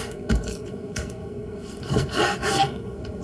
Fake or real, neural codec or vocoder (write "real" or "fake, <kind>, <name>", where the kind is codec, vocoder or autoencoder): fake, codec, SNAC